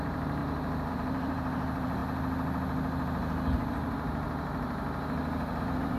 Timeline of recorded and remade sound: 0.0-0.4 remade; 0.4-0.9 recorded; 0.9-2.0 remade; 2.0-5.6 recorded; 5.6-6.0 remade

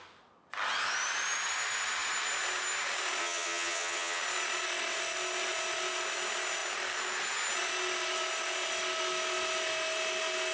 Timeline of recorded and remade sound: 0.0-3.2 recorded; 3.2-4.2 remade; 4.2-10.5 recorded

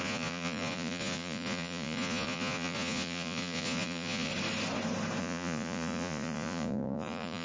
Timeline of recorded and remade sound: 0.0-4.3 remade; 4.3-5.2 recorded; 5.2-7.4 remade

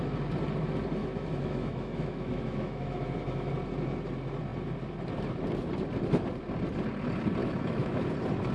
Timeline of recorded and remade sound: 0.0-1.0 recorded; 1.0-3.5 remade; 3.5-7.4 recorded; 7.4-8.1 remade; 8.1-8.5 recorded

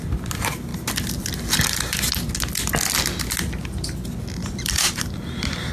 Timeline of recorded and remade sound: 0.0-4.4 recorded; 4.4-4.9 remade; 4.9-5.7 recorded